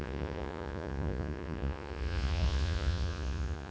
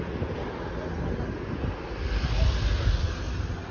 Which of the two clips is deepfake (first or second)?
first